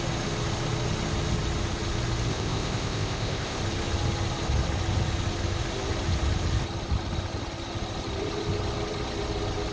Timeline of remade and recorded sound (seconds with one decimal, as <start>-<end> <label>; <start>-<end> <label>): 0.0-2.3 recorded; 2.3-3.6 remade; 3.6-9.7 recorded